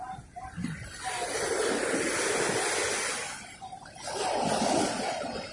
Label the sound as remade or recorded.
recorded